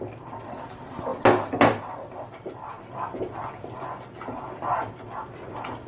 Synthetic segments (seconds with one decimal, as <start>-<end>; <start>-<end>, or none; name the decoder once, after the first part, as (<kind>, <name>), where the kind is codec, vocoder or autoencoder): none